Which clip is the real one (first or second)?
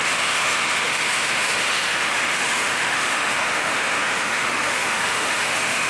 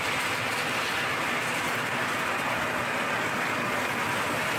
second